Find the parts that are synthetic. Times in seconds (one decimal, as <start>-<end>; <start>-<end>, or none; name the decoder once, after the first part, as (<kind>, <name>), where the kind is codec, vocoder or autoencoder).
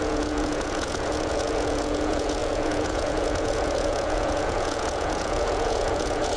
0.0-6.4 (vocoder, Vocos)